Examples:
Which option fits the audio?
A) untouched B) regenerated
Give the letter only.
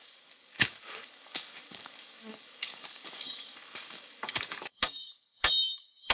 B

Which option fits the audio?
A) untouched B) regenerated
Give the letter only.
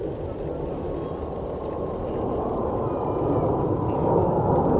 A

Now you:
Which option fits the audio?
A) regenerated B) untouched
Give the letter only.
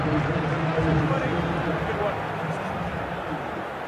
B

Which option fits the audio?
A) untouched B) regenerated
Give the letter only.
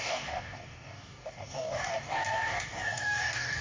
B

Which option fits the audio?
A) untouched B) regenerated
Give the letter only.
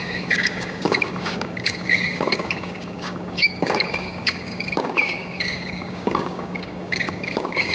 B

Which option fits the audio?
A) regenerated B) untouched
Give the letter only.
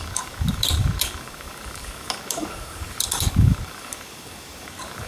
A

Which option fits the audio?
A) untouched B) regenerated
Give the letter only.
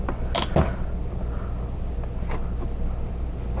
A